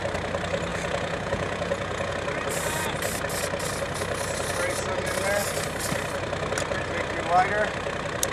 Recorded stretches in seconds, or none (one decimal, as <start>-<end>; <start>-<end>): 0.0-0.7; 2.1-8.3